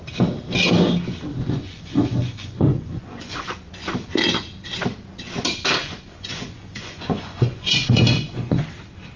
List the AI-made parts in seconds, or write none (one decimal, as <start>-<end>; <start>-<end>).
1.3-3.5; 5.8-8.6

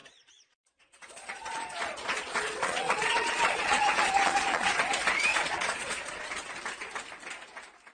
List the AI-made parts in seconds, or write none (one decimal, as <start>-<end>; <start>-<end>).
0.0-4.7; 5.3-6.3

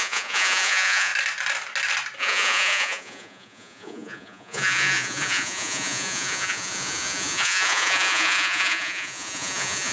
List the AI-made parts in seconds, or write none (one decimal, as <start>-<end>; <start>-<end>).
0.0-1.1; 2.2-9.9

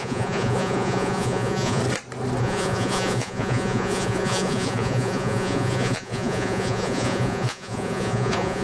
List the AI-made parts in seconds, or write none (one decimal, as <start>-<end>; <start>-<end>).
0.0-1.8; 2.4-8.6

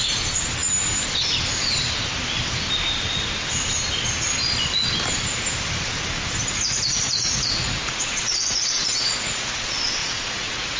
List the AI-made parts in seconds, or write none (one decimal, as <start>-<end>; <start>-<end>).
6.4-9.6; 10.0-10.8

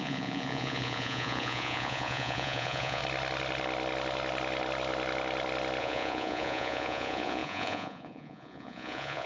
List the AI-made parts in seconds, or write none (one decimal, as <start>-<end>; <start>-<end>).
0.0-3.0; 5.8-9.3